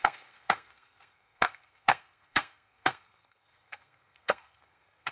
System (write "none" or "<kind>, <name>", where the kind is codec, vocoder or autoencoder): codec, SNAC